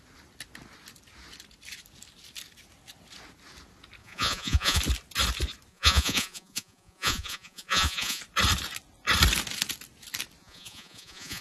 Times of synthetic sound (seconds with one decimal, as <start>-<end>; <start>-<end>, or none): 4.0-4.8; 5.7-8.2; 10.4-11.4